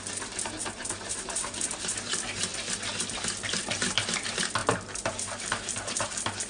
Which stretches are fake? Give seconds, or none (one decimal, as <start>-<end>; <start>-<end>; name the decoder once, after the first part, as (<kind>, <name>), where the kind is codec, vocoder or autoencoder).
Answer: 0.0-2.5 (vocoder, BigVGAN v2); 3.6-6.5